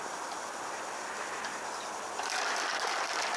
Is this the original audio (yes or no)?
yes